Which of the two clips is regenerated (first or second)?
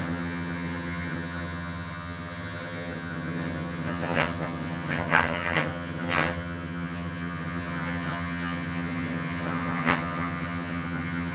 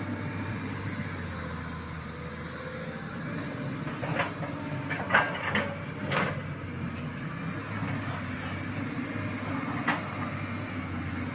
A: first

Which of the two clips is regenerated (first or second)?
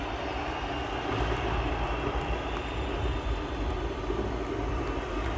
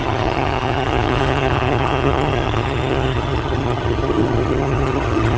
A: second